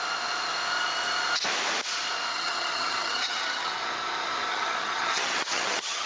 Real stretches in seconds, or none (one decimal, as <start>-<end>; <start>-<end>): 0.0-2.3; 3.7-4.5